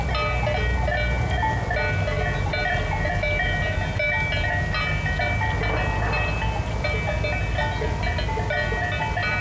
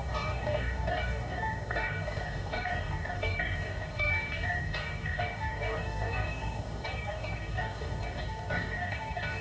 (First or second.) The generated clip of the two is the second